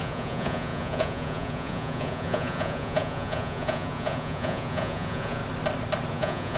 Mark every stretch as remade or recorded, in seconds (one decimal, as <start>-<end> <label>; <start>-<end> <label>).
0.0-5.4 remade; 5.4-6.1 recorded; 6.1-6.6 remade